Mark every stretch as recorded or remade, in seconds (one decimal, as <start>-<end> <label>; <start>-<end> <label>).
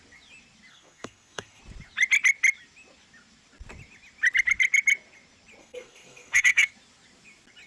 0.0-0.7 recorded; 0.7-1.6 remade; 1.6-5.6 recorded; 5.6-6.7 remade; 6.7-7.7 recorded